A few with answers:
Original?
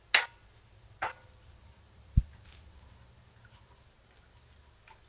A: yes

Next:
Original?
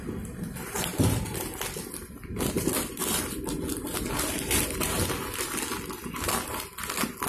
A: yes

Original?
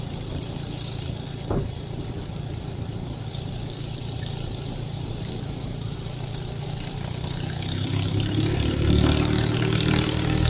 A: no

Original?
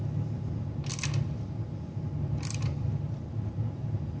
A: yes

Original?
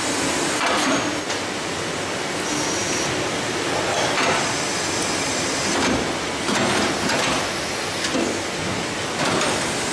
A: yes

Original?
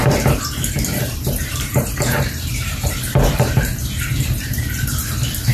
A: no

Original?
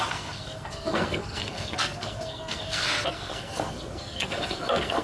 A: no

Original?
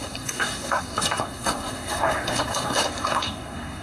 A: no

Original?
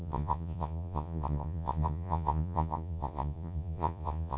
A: no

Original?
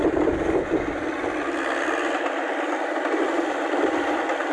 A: yes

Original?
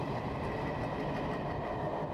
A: yes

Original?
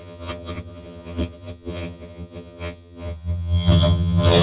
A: no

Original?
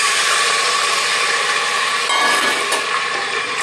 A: yes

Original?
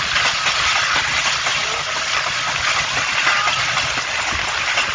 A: yes